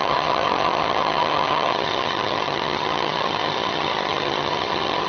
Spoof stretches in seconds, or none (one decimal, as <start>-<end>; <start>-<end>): 0.0-5.1